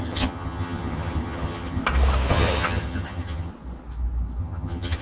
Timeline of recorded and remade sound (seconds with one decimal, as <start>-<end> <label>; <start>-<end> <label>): 0.0-1.8 remade; 1.8-2.3 recorded; 2.3-3.5 remade; 3.5-4.4 recorded; 4.4-5.0 remade